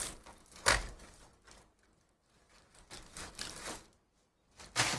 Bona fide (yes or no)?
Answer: yes